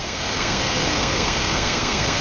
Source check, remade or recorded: remade